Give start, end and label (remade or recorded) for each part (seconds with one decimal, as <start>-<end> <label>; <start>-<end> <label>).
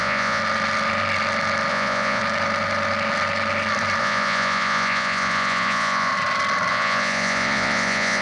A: 0.0-0.4 remade; 0.4-1.7 recorded; 1.7-2.2 remade; 2.2-4.0 recorded; 4.0-6.1 remade; 6.1-6.7 recorded; 6.7-8.2 remade